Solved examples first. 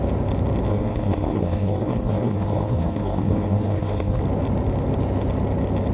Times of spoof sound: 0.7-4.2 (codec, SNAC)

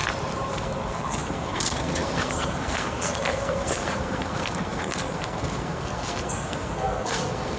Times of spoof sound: 0.5-7.6 (codec, SNAC)

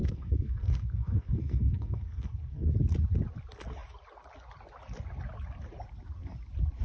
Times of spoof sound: 0.0-2.7 (codec, SNAC)